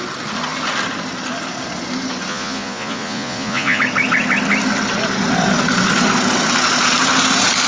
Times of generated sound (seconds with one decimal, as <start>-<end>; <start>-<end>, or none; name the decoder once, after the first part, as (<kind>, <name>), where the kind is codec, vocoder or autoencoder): 2.3-3.8 (vocoder, Vocos)